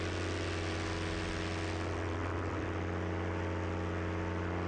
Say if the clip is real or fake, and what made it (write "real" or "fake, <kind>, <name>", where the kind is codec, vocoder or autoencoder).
real